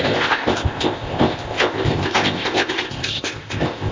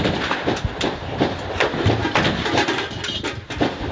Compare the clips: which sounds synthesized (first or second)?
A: first